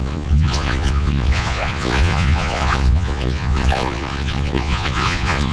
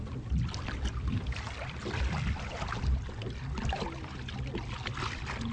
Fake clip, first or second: first